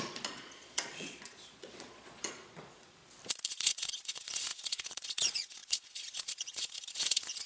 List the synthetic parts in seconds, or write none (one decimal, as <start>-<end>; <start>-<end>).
0.0-3.0; 3.5-7.5